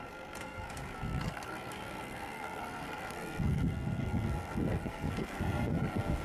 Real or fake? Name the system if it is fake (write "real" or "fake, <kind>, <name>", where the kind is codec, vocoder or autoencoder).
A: fake, codec, SNAC